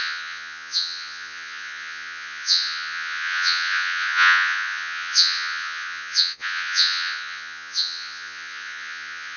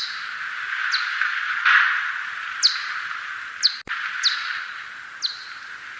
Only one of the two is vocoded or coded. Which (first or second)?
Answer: first